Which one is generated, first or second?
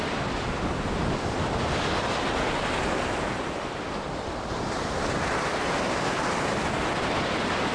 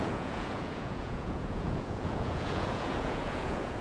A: second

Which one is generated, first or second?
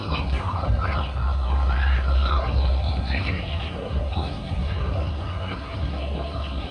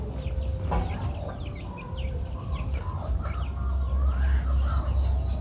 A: first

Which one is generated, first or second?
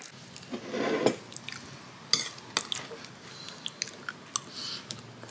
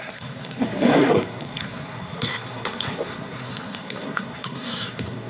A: second